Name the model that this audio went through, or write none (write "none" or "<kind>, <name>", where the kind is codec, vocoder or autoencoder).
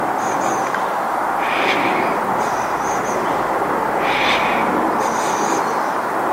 none